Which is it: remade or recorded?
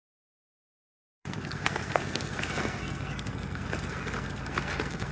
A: remade